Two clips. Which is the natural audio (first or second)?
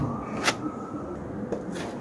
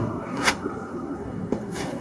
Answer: first